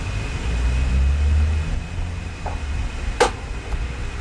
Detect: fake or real real